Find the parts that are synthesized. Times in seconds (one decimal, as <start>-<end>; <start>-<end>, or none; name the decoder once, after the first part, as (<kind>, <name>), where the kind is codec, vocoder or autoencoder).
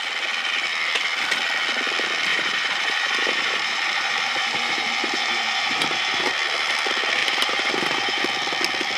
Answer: 2.3-6.3 (vocoder, BigVGAN v2); 7.2-8.2